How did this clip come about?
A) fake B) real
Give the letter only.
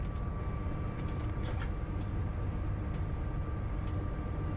B